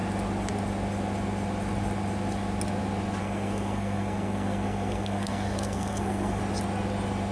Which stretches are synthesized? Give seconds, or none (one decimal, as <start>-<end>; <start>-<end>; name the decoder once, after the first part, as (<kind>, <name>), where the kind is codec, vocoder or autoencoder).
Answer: 3.2-6.4 (codec, SNAC)